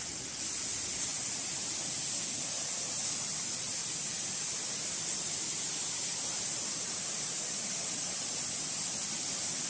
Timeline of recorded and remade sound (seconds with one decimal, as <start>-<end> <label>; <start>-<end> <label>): 0.0-9.7 recorded